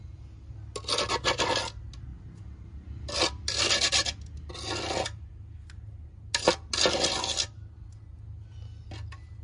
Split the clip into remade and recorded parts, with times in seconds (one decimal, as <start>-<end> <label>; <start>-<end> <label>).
0.0-9.4 recorded